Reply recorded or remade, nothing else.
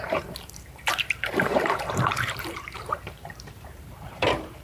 remade